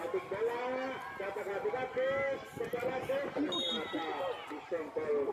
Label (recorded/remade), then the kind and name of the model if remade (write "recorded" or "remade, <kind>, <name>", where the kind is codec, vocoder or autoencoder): recorded